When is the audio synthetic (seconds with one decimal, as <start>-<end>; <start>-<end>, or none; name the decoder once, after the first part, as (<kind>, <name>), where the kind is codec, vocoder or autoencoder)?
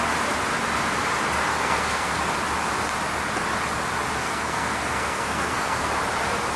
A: 1.5-2.2 (codec, SNAC); 4.2-5.9